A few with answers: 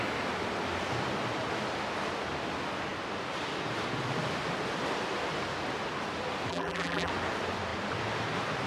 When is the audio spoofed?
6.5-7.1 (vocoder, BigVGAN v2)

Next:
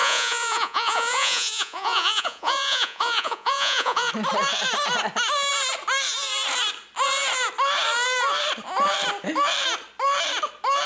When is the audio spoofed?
0.0-4.1 (vocoder, Vocos)

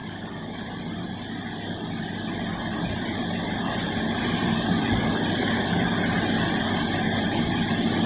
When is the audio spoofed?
none

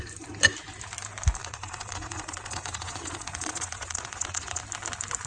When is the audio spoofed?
1.4-4.6 (vocoder, Vocos)

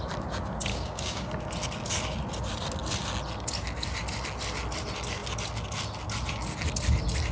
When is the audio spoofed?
0.7-1.3 (codec, DAC)

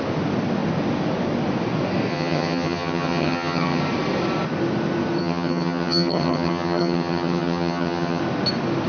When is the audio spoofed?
2.1-3.8 (vocoder, HiFi-GAN); 5.2-8.2

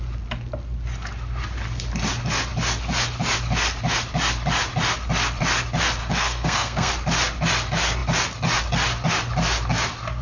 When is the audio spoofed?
6.0-6.9 (codec, SNAC)